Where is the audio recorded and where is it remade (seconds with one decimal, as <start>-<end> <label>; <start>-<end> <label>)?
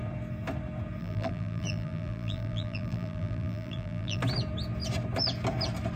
0.0-1.0 recorded; 1.0-4.2 remade; 4.2-6.0 recorded